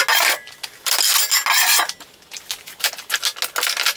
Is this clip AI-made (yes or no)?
no